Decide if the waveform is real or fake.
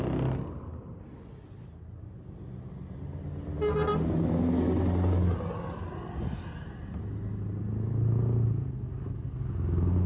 real